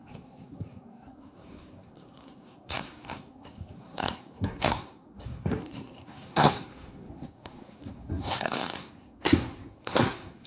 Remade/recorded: remade